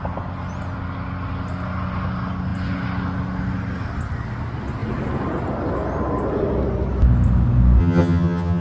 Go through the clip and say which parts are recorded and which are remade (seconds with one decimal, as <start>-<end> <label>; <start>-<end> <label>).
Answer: 0.0-7.8 recorded; 7.8-8.6 remade